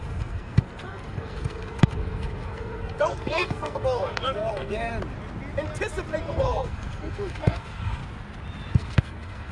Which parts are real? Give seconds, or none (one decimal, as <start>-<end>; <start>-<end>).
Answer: 4.9-6.2; 8.0-8.7